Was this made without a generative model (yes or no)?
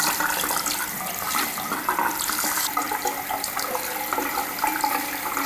yes